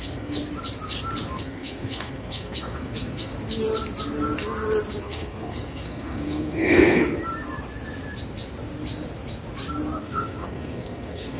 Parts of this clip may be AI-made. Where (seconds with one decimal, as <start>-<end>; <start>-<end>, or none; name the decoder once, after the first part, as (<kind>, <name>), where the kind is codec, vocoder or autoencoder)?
0.0-0.4 (codec, SNAC); 1.4-3.3; 5.0-7.1; 10.0-11.4